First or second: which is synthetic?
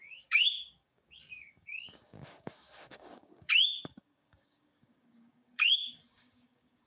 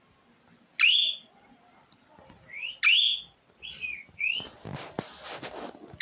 first